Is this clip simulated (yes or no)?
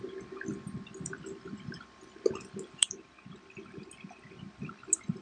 no